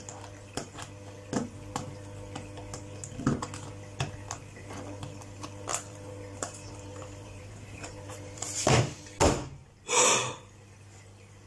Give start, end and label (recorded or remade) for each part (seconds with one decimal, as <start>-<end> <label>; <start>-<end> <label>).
0.0-5.7 recorded; 5.7-8.8 remade; 8.8-11.5 recorded